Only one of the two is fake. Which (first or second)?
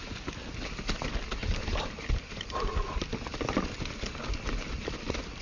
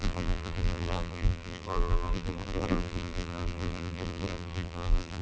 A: second